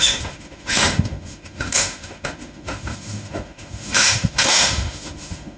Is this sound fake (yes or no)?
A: yes